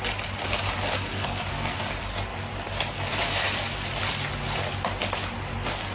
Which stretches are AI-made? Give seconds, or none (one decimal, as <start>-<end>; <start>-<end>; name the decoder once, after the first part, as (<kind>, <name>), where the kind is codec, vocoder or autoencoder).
1.1-1.8 (codec, SNAC)